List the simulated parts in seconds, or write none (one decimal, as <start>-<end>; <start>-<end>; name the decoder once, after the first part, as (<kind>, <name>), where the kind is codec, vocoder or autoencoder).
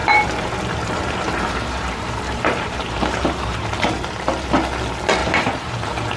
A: 0.0-3.7 (vocoder, BigVGAN v2); 5.2-6.2